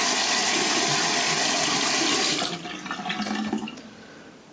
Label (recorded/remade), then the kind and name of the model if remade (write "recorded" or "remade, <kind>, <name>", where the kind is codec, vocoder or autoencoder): recorded